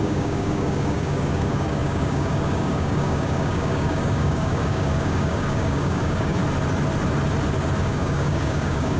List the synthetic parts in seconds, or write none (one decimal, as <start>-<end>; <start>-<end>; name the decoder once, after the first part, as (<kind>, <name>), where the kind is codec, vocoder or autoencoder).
0.0-6.4 (codec, DAC); 7.8-9.0